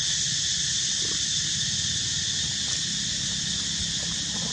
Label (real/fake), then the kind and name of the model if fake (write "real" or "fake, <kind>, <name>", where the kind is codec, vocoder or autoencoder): real